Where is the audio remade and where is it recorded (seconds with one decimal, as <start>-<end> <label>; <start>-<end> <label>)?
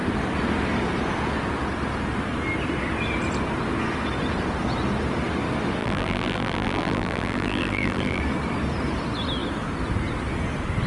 0.0-5.8 recorded; 5.8-8.2 remade; 8.2-10.9 recorded